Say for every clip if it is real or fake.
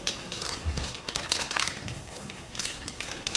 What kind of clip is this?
fake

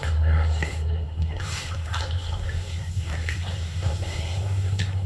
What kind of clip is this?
fake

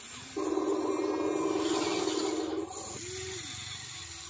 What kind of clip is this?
real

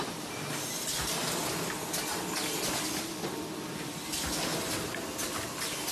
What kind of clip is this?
real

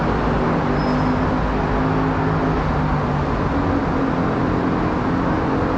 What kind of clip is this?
real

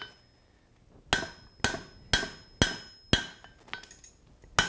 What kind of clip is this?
real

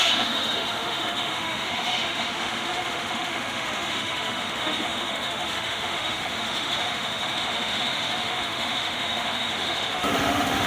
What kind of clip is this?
fake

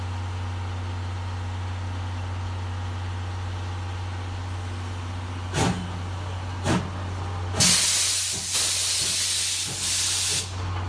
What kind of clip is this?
real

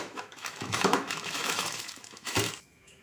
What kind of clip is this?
fake